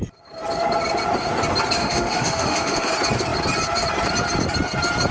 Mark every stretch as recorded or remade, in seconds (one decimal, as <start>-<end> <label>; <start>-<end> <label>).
0.0-1.8 recorded; 1.8-2.9 remade; 2.9-5.1 recorded